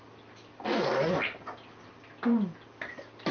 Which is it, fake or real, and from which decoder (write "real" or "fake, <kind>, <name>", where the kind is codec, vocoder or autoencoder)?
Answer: real